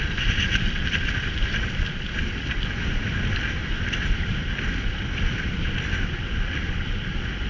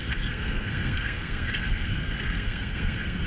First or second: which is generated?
second